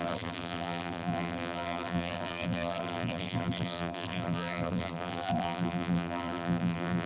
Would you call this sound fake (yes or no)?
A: yes